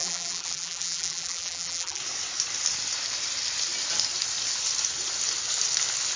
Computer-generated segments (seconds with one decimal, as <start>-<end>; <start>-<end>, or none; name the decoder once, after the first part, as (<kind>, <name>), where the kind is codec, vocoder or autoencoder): 0.0-2.0 (vocoder, BigVGAN v2)